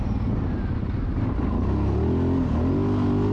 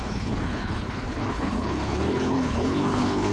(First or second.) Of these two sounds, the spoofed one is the second